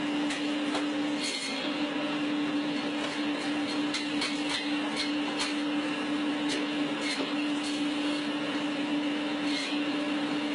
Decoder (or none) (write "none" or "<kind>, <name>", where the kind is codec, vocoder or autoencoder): none